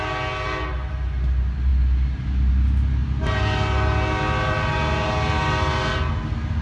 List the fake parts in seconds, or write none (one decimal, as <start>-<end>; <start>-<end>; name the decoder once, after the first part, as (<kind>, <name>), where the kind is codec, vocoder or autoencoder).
none